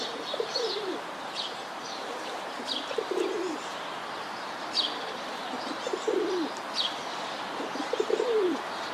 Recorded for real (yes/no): no